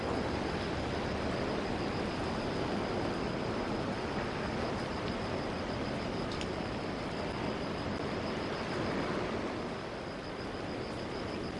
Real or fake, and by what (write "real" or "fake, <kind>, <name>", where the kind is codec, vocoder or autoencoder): real